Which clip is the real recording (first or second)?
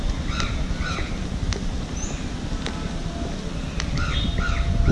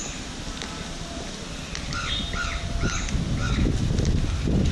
first